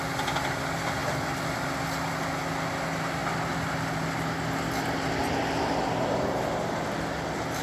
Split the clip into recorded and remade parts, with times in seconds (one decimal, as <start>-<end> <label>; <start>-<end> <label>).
0.0-7.6 recorded